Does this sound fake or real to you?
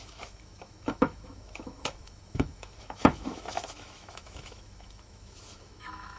fake